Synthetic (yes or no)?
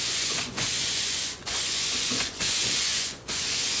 yes